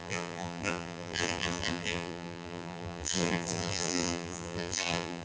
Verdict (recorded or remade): remade